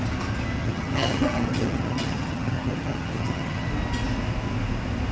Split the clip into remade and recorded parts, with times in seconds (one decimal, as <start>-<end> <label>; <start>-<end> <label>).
0.0-0.6 recorded; 0.6-3.7 remade; 3.7-5.1 recorded